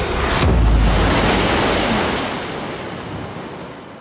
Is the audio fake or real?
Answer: real